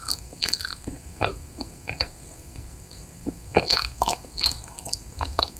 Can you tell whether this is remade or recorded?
remade